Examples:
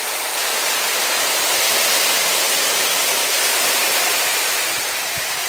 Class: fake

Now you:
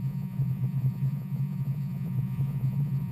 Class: fake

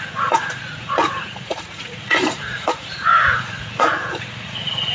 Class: fake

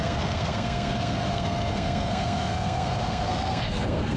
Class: fake